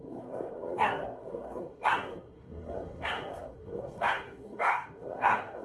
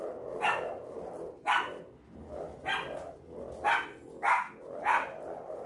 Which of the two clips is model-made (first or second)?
first